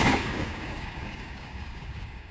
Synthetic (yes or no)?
yes